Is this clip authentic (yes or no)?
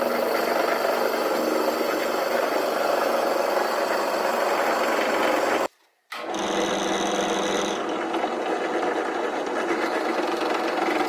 yes